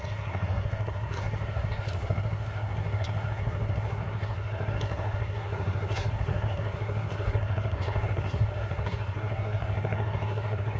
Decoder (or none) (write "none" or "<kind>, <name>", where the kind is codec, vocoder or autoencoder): codec, SNAC